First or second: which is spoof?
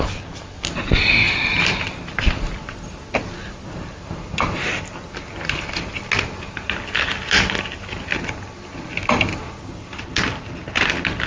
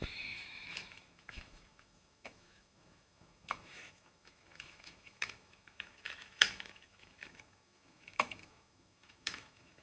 second